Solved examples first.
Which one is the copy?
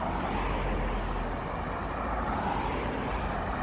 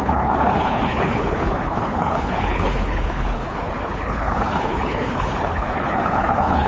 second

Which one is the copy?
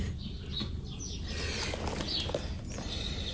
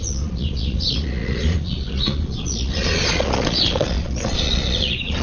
second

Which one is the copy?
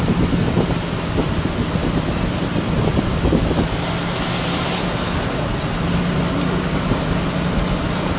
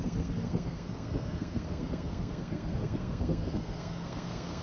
second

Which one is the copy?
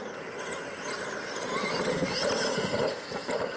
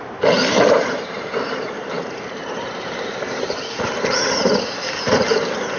second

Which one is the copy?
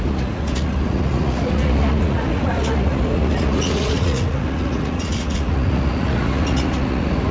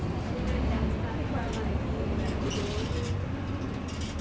first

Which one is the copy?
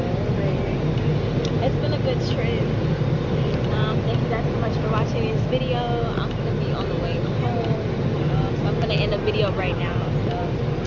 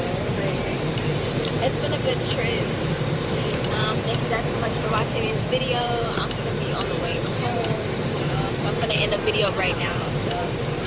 second